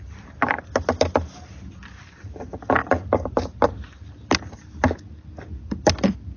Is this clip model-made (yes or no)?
no